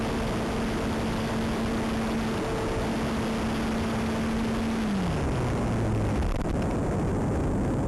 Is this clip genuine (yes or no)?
yes